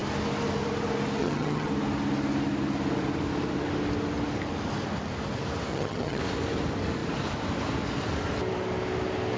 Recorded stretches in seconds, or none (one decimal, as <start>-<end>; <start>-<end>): 0.0-1.2; 1.7-5.7; 6.2-9.4